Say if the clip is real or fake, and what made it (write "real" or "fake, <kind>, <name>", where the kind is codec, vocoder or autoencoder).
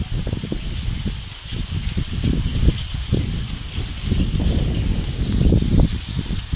real